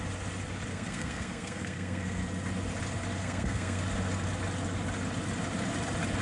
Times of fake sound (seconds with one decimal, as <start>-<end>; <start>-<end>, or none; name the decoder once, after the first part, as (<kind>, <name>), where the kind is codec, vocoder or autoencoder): 0.7-2.2 (codec, SNAC); 3.2-3.8